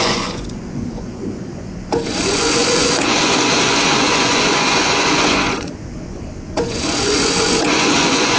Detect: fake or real fake